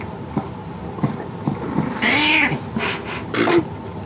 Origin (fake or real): fake